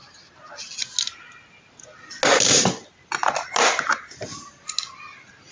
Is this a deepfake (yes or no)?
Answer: no